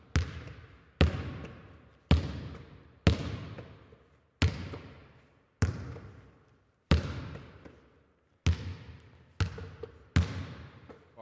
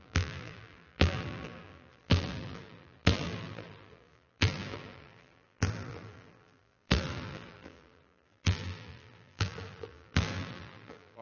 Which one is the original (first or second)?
first